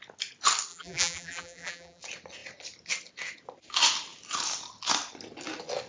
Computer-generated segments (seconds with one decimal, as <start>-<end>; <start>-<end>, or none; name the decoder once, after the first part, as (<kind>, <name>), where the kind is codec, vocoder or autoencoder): 0.7-2.0 (vocoder, BigVGAN v2)